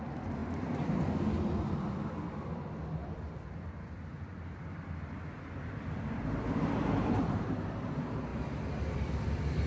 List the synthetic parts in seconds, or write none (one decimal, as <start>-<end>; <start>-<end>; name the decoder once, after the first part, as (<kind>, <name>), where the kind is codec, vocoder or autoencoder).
0.0-0.4 (vocoder, BigVGAN v2); 1.9-8.3; 8.8-9.7